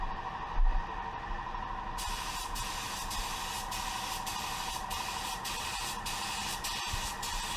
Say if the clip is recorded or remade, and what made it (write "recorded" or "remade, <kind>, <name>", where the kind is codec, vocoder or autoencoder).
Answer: recorded